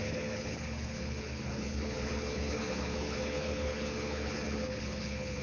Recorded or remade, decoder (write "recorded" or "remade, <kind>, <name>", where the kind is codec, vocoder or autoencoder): remade, codec, HILCodec